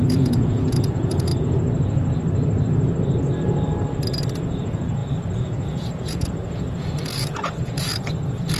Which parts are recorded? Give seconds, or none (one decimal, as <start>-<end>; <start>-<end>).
1.3-4.3